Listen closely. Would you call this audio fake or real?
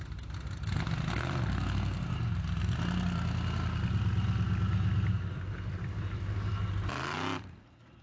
real